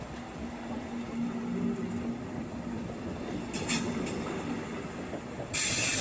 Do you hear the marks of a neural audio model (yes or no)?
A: no